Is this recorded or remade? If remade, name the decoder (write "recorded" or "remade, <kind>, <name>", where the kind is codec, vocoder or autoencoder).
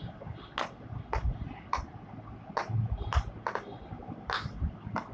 recorded